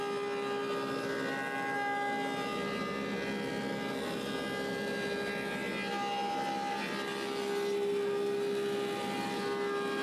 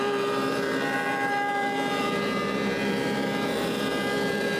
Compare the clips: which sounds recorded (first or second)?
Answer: first